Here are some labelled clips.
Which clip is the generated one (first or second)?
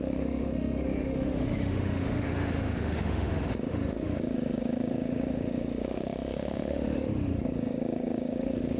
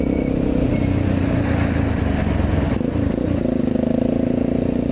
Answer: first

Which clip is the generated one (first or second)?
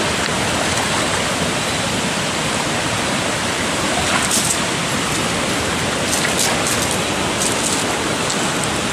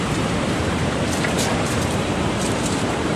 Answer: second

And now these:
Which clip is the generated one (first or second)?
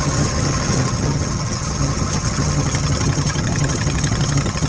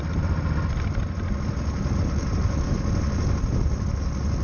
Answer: first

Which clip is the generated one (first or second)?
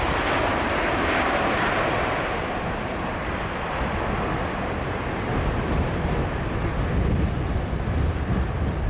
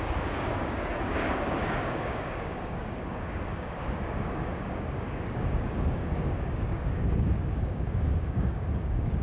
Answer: second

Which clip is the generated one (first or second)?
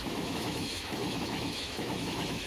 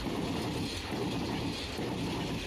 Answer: first